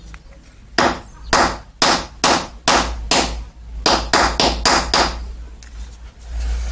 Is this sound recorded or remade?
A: recorded